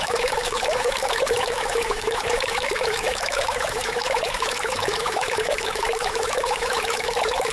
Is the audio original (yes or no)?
no